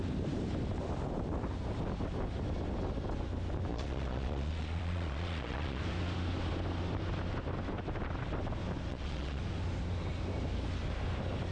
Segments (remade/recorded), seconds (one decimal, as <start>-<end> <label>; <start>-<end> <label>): 0.0-3.7 recorded; 3.7-5.8 remade; 5.8-8.9 recorded; 8.9-9.4 remade; 9.4-11.5 recorded